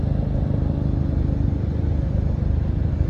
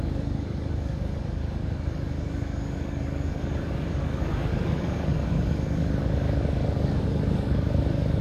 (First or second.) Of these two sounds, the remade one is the second